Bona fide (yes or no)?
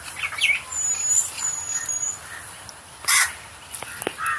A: yes